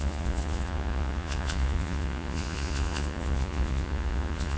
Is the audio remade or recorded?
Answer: remade